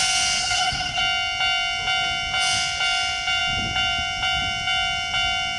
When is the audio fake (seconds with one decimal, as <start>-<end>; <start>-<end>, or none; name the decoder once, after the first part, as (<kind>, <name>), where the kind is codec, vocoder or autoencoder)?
0.4-1.0 (codec, SNAC)